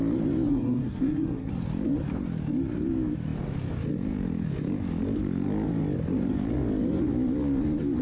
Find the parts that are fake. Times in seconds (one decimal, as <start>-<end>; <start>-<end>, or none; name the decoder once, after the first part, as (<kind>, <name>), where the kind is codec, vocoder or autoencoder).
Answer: 0.5-1.5 (codec, SNAC)